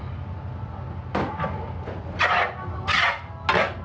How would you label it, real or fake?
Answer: real